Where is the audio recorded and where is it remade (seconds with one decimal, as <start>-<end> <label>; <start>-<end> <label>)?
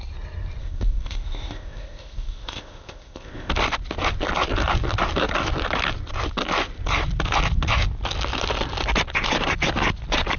0.0-0.6 recorded; 0.6-3.5 remade; 3.5-10.4 recorded